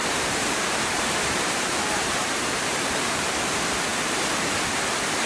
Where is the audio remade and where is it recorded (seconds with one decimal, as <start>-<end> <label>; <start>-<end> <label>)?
0.0-3.2 remade; 3.2-5.3 recorded